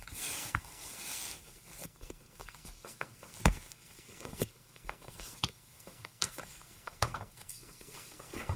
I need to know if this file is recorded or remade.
remade